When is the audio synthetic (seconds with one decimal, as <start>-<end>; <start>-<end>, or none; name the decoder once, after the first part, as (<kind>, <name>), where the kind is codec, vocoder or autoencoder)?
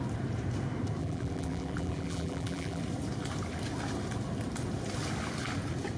1.0-2.8 (vocoder, BigVGAN v2)